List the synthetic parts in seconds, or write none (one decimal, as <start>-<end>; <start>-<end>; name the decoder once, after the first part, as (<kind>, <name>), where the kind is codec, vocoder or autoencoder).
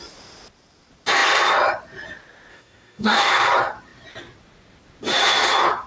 2.5-3.3 (codec, DAC)